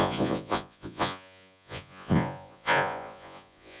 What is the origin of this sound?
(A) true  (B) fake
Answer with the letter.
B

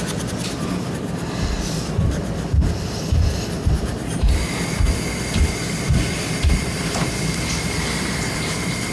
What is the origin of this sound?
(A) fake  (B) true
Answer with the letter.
A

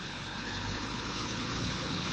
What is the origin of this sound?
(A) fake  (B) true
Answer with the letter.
A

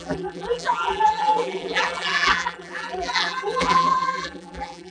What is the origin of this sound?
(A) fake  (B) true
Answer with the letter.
A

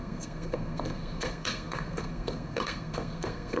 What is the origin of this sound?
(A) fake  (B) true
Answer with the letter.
A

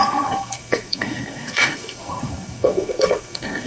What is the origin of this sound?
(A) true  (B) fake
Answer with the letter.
B